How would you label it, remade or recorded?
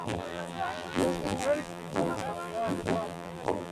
remade